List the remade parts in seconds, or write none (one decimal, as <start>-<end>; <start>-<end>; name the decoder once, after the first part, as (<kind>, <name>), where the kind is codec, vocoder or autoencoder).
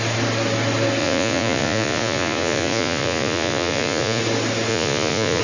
1.0-4.2 (vocoder, Vocos); 4.7-5.4